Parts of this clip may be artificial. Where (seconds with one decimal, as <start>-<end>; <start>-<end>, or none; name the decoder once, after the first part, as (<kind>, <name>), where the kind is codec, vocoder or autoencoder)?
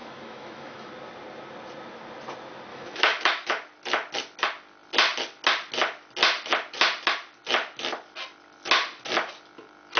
0.0-0.9 (autoencoder, DAC-VAE); 2.7-3.5